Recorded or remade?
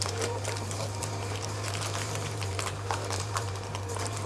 remade